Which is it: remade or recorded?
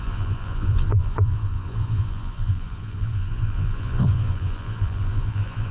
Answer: remade